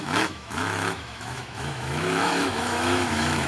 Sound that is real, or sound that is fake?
fake